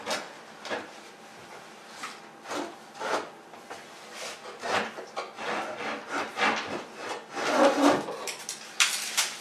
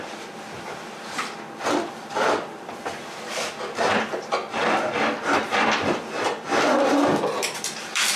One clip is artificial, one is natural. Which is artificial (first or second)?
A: second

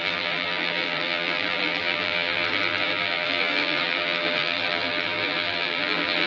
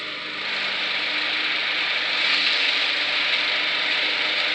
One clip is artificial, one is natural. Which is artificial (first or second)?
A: first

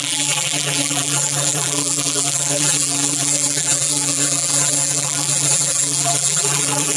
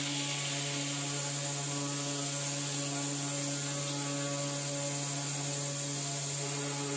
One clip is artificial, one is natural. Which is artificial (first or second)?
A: first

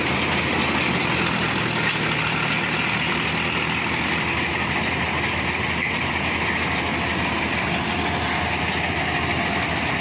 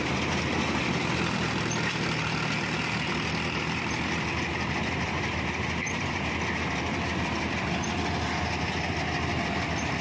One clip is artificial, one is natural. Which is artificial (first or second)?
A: second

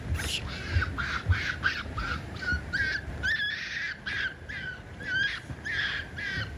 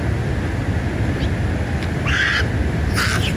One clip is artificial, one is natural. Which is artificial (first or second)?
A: first